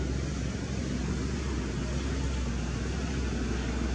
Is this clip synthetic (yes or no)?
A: no